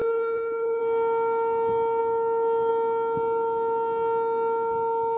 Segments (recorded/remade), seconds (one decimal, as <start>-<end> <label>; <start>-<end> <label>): 0.0-0.8 remade; 0.8-5.2 recorded

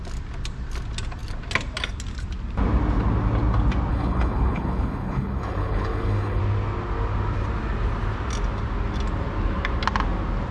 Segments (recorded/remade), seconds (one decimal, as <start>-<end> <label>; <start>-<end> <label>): 0.0-3.9 recorded; 3.9-6.4 remade; 6.4-10.5 recorded

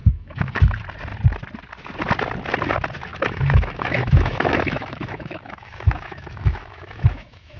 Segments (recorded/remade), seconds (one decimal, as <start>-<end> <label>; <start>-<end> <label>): 0.0-0.6 remade; 0.6-3.1 recorded; 3.1-7.6 remade

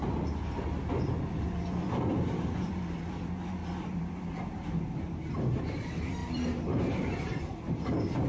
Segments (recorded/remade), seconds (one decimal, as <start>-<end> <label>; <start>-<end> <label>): 0.0-8.3 remade

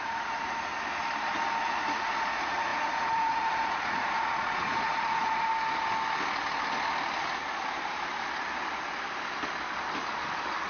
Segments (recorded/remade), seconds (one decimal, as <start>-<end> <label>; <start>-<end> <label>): 0.0-0.7 remade; 0.7-1.6 recorded; 1.6-5.5 remade; 5.5-10.7 recorded

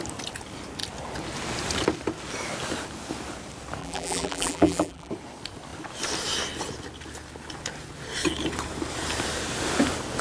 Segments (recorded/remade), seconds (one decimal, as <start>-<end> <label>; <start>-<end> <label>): 0.0-3.8 recorded; 3.8-5.1 remade; 5.1-10.2 recorded